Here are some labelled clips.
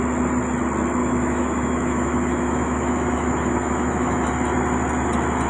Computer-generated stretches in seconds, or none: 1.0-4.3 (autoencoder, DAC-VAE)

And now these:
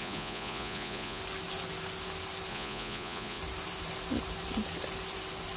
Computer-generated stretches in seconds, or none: 0.0-1.2 (vocoder, Vocos); 2.5-3.4

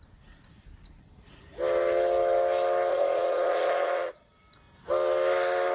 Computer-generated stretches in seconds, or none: 2.9-4.3 (vocoder, Vocos)

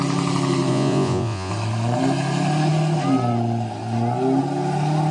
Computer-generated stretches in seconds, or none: 0.7-1.5 (vocoder, Vocos)

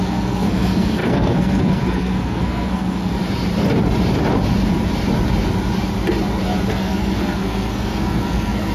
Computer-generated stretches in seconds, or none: 0.0-3.1 (codec, SNAC); 6.7-8.7

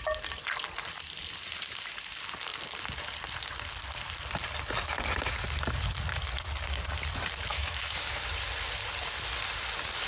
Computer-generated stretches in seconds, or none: 7.5-8.3 (autoencoder, DAC-VAE)